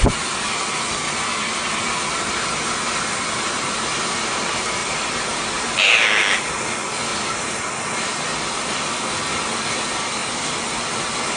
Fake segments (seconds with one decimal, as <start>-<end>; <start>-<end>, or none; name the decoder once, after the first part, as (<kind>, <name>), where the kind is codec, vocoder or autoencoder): 4.8-5.3 (vocoder, BigVGAN v2); 8.3-9.0